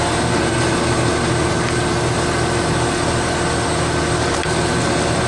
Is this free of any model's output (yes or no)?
yes